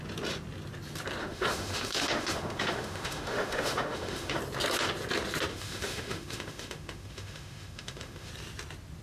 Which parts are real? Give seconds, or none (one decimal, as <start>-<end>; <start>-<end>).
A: 0.0-1.2; 4.4-5.5; 8.3-9.0